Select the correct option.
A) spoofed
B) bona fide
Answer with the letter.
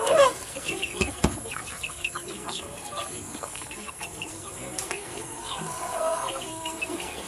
A